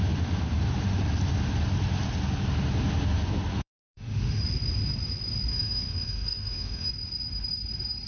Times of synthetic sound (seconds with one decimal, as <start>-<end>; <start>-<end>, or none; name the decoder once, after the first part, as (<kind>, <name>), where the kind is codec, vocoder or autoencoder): 3.5-4.4 (autoencoder, DAC-VAE); 5.5-6.9